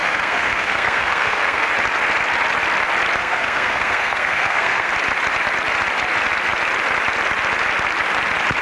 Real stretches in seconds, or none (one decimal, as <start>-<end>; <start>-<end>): 1.7-3.2; 4.9-8.6